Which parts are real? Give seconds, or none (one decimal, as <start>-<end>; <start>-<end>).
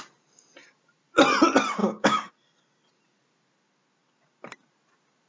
0.0-1.8; 2.3-5.3